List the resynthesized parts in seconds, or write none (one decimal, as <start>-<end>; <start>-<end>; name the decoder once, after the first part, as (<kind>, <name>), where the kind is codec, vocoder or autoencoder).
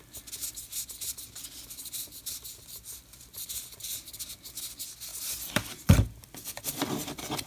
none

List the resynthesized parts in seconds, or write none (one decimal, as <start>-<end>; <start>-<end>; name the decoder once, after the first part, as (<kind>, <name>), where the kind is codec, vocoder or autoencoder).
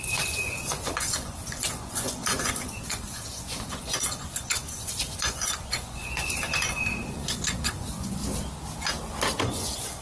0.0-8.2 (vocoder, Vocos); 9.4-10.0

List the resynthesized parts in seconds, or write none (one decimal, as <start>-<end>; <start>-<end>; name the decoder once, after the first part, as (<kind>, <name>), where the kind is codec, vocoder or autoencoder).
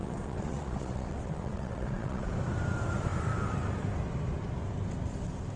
0.0-2.3 (vocoder, WaveNeXt)